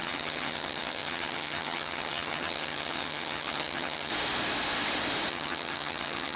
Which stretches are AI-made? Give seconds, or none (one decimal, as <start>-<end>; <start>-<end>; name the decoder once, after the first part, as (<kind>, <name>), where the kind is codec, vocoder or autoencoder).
0.0-4.1 (vocoder, HiFi-GAN); 5.3-6.4